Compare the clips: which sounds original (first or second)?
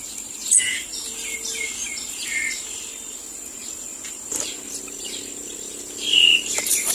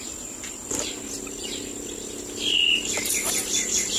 second